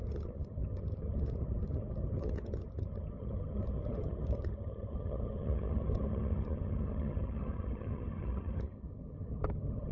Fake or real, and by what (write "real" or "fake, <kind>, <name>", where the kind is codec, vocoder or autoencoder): fake, vocoder, HiFi-GAN